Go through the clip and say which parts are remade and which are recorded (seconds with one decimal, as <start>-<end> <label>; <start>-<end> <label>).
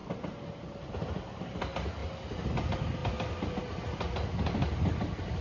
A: 0.0-3.0 recorded; 3.0-3.6 remade; 3.6-5.4 recorded